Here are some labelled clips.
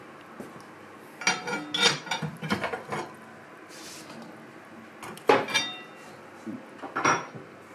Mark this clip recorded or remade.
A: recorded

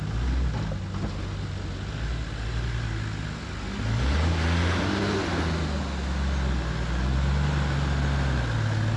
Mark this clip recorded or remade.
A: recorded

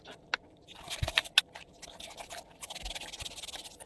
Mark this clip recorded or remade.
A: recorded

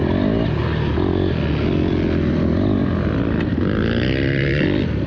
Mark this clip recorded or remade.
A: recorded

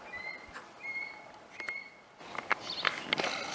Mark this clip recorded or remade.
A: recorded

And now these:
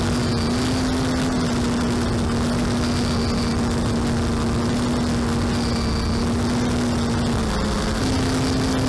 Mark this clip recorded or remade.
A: recorded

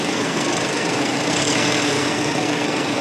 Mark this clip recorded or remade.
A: remade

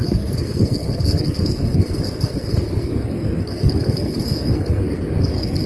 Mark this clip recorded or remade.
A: remade